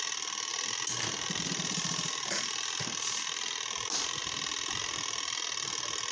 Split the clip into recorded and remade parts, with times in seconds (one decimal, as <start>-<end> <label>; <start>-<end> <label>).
0.0-6.1 recorded